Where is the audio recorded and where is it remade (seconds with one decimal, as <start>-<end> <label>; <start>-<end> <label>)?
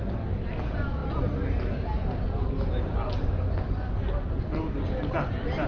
0.0-5.7 recorded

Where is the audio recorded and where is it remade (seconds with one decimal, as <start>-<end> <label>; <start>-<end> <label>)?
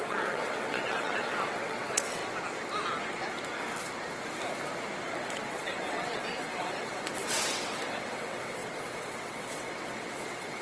0.0-2.2 remade; 2.2-5.1 recorded; 5.1-10.6 remade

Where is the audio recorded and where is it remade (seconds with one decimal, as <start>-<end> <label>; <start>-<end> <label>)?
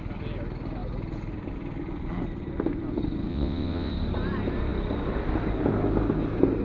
0.0-3.3 recorded; 3.3-3.9 remade; 3.9-6.6 recorded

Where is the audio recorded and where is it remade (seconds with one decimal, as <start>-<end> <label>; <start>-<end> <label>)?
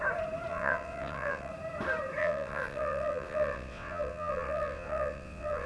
0.0-0.5 recorded; 0.5-1.5 remade; 1.5-2.2 recorded; 2.2-5.7 remade